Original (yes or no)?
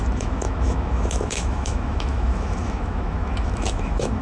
no